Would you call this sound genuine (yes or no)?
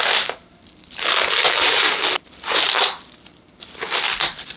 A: yes